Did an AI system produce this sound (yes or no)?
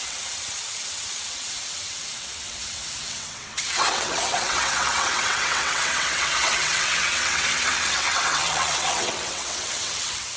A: yes